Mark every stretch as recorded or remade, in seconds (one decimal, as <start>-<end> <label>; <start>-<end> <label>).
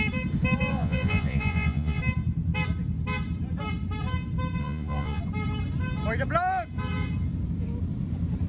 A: 0.0-0.7 recorded; 0.7-2.0 remade; 2.0-4.6 recorded; 4.6-5.2 remade; 5.2-8.5 recorded